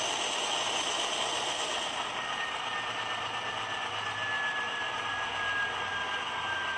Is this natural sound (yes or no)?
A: yes